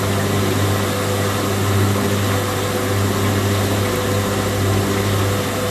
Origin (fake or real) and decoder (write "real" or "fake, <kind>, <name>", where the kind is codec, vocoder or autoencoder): real